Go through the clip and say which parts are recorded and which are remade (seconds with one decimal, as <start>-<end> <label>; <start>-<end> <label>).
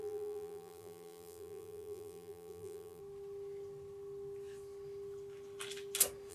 0.0-3.0 remade; 3.0-6.3 recorded